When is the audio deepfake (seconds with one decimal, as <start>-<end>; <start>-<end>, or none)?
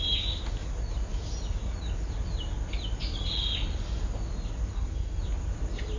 4.7-5.2